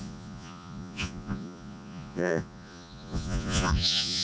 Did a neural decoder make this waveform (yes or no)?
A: yes